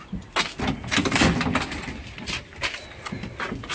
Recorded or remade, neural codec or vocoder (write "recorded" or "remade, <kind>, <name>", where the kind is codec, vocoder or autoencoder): recorded